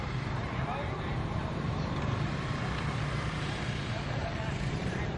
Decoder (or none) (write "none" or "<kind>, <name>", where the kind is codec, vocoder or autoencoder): vocoder, BigVGAN v2